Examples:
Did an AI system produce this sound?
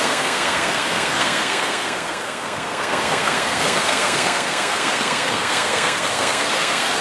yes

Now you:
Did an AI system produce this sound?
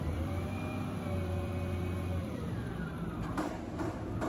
yes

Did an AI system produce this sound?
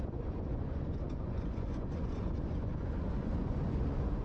yes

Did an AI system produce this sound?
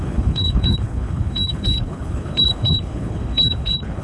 yes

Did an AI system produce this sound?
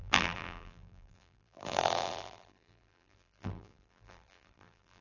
yes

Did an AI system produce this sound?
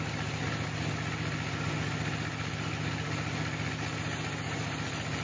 no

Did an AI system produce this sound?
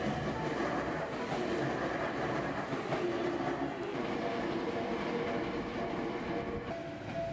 no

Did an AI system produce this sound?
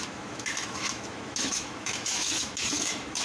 yes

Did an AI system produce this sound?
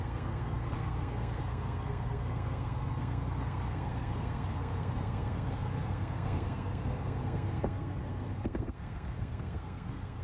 yes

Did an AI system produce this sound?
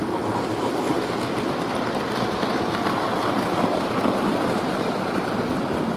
no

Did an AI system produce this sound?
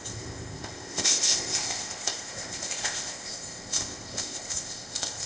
yes